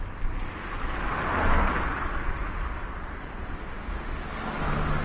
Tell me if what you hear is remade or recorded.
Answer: recorded